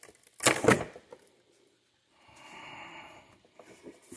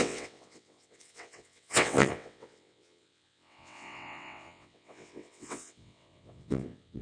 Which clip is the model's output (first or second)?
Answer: second